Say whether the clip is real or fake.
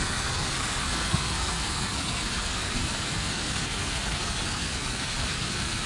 fake